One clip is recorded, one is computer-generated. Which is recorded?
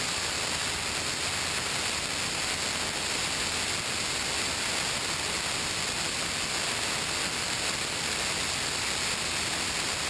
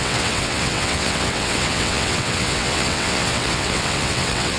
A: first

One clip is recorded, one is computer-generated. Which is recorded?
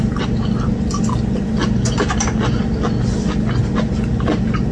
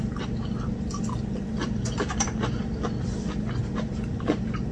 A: first